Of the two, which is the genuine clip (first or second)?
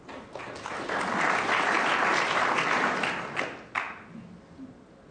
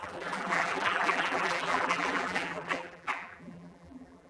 first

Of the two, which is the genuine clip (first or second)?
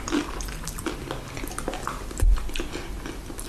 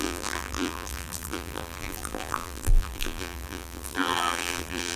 first